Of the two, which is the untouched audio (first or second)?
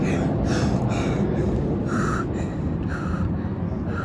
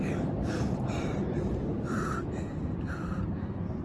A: first